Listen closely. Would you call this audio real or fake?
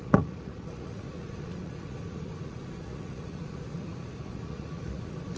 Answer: fake